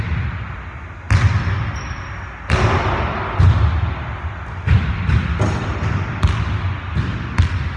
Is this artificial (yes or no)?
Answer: no